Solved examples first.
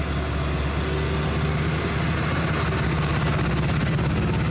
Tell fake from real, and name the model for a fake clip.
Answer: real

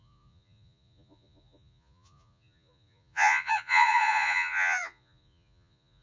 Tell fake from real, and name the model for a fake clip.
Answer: fake, vocoder, Vocos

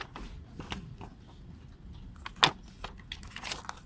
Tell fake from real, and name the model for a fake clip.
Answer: real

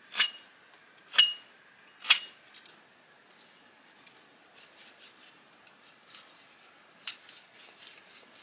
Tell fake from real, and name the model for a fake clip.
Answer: real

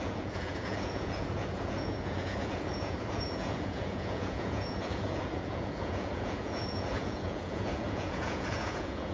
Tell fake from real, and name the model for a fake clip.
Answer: fake, vocoder, Vocos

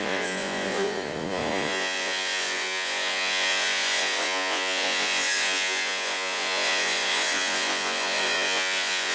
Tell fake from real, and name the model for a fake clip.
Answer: fake, vocoder, Vocos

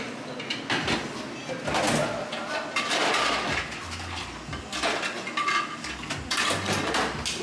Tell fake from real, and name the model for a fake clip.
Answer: real